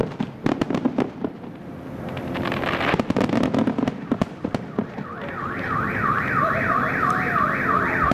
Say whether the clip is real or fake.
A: fake